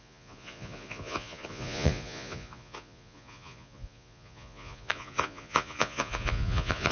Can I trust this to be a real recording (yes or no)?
no